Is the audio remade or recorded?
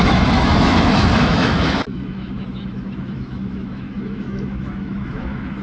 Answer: remade